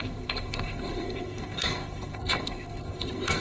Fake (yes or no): yes